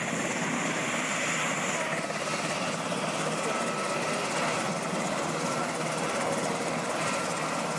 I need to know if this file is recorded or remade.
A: recorded